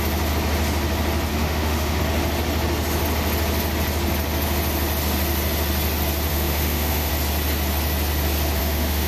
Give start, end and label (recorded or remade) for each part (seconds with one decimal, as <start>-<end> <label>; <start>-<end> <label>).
0.0-1.3 recorded; 1.3-2.0 remade; 2.0-6.3 recorded; 6.3-7.1 remade; 7.1-8.6 recorded; 8.6-9.1 remade